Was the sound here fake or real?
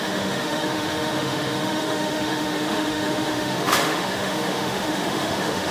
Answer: fake